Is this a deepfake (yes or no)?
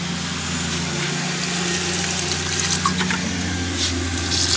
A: no